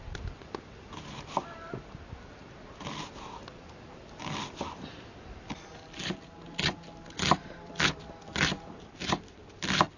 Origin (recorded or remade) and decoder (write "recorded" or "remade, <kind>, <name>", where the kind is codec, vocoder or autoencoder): recorded